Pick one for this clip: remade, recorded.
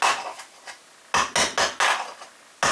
recorded